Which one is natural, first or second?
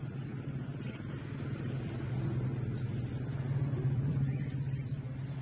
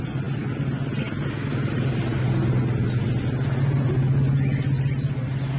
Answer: second